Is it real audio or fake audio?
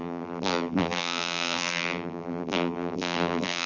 fake